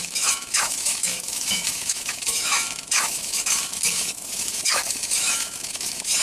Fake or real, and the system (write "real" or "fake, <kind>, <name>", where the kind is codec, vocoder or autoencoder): fake, autoencoder, DAC-VAE